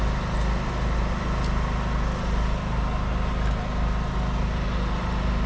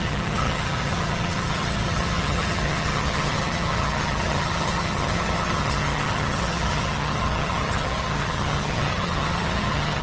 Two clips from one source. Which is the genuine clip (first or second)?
first